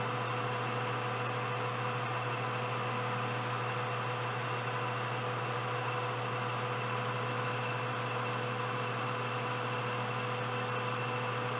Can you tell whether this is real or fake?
real